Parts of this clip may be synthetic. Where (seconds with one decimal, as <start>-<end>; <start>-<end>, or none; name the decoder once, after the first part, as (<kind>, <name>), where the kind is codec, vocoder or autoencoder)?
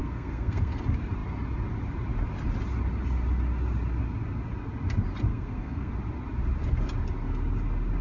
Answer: 0.0-0.7 (codec, SNAC); 5.3-5.9